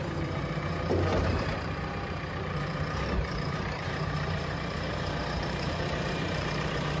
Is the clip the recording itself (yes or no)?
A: no